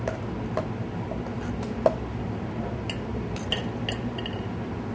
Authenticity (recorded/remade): recorded